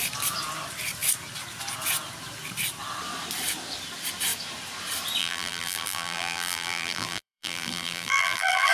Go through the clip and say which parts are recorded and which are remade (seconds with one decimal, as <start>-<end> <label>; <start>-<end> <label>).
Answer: 0.0-5.2 recorded; 5.2-8.7 remade